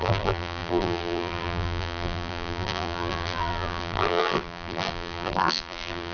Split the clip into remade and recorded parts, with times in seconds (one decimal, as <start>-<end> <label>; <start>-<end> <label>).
0.0-6.1 remade